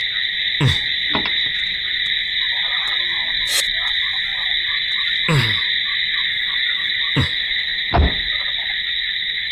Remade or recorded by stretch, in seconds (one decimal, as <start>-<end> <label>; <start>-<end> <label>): 0.0-6.3 recorded; 6.3-6.9 remade; 6.9-9.5 recorded